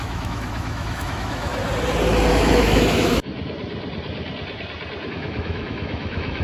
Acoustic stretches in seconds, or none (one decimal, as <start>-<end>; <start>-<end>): 1.5-2.3; 3.3-5.1